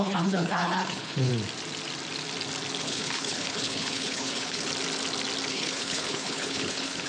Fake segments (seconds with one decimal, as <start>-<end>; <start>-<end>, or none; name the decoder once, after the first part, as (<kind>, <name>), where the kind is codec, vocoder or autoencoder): 0.0-1.3 (codec, HILCodec); 2.8-4.7; 5.5-7.1